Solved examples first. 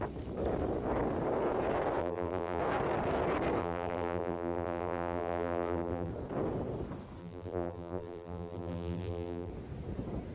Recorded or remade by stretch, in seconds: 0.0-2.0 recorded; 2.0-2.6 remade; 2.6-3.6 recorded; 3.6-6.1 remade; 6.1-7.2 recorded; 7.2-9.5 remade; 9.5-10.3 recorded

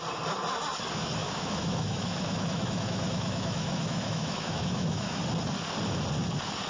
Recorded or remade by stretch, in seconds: 0.0-1.2 recorded; 1.2-5.2 remade; 5.2-6.7 recorded

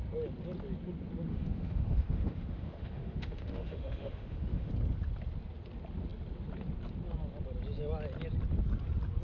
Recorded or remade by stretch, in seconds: 0.0-1.3 recorded; 1.3-4.7 remade; 4.7-9.2 recorded